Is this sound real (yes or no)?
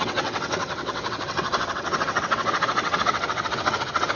no